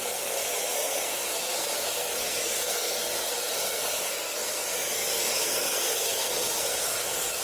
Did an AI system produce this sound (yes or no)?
yes